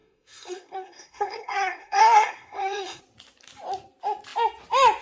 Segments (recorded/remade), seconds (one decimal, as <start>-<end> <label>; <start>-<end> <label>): 0.0-3.0 remade; 3.0-5.0 recorded

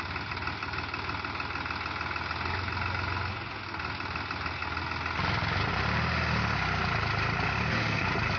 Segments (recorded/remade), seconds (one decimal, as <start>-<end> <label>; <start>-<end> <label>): 0.0-8.4 recorded

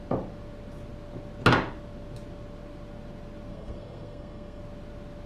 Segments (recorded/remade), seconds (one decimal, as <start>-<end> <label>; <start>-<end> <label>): 0.0-3.5 recorded; 3.5-4.6 remade; 4.6-5.3 recorded

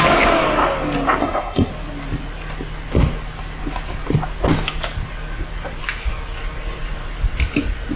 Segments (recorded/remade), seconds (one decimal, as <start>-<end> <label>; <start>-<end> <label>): 0.0-1.2 recorded; 1.2-1.7 remade; 1.7-8.0 recorded

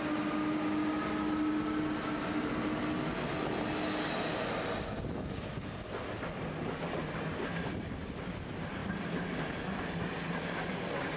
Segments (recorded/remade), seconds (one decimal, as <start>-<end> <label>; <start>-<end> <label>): 0.0-11.2 recorded

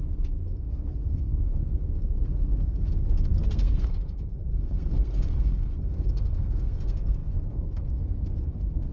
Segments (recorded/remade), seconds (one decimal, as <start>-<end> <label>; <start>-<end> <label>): 0.0-8.9 remade

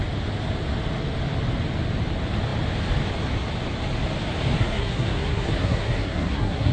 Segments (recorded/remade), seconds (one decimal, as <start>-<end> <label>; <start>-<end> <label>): 0.0-4.6 recorded; 4.6-6.7 remade